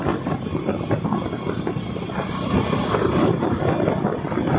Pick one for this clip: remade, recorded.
recorded